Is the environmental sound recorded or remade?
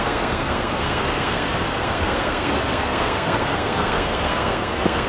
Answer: remade